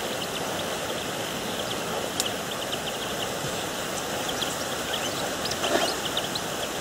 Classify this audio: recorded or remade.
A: recorded